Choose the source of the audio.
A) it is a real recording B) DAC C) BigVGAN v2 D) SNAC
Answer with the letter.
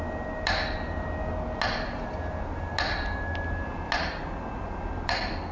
A